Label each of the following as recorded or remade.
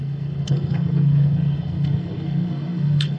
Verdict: remade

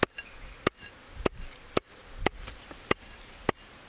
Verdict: recorded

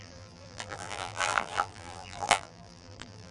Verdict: remade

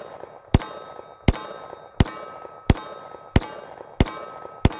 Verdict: recorded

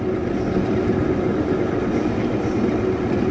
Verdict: recorded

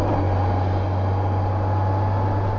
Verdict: recorded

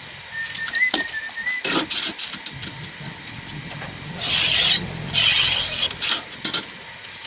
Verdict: recorded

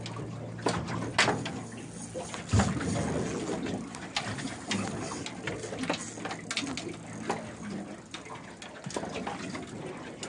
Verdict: recorded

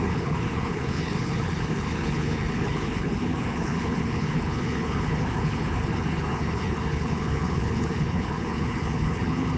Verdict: remade